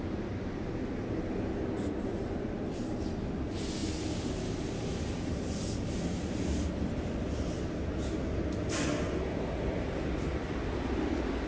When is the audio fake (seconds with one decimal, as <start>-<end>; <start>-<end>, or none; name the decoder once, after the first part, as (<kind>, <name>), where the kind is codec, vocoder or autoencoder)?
none